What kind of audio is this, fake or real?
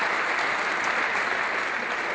real